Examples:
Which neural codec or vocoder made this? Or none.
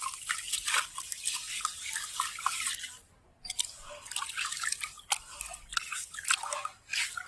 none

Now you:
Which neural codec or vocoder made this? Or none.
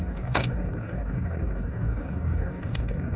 codec, DAC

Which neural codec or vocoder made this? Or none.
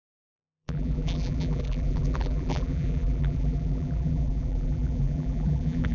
vocoder, BigVGAN v2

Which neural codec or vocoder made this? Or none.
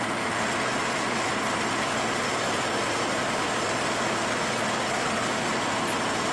none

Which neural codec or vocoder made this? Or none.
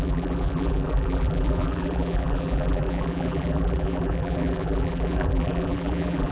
vocoder, BigVGAN v2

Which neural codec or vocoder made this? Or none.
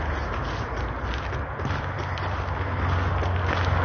none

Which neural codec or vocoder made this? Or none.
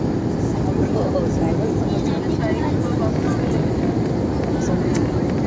none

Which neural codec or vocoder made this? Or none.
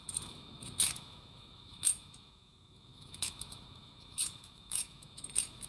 autoencoder, DAC-VAE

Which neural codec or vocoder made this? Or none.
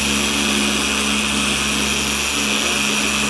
none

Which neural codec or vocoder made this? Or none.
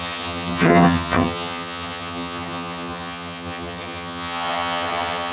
vocoder, HiFi-GAN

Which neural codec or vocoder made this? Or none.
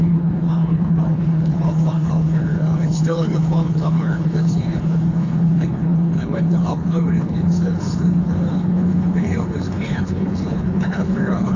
codec, HILCodec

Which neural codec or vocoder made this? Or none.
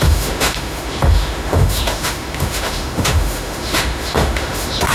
autoencoder, DAC-VAE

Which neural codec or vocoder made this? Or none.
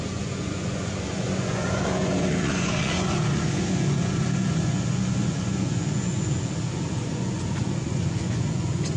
vocoder, Vocos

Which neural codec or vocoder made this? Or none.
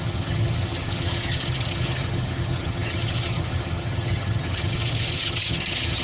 vocoder, HiFi-GAN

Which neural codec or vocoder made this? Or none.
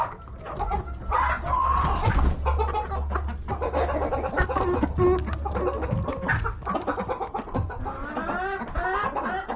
none